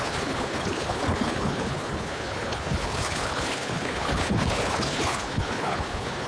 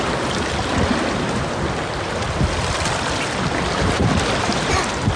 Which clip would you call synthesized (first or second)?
first